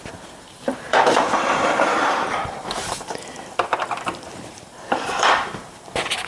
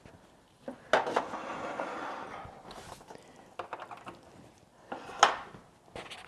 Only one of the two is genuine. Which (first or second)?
second